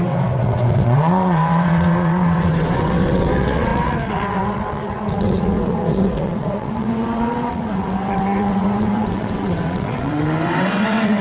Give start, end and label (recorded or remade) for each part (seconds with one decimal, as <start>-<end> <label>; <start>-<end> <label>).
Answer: 0.0-11.2 remade